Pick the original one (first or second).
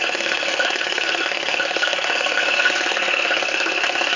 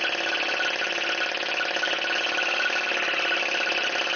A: second